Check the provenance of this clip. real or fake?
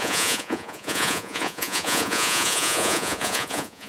fake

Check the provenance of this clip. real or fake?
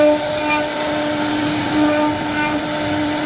real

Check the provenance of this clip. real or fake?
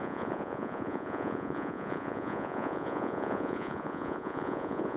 fake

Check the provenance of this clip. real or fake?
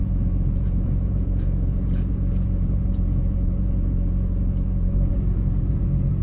fake